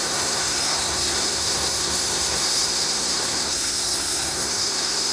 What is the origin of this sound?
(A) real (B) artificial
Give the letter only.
B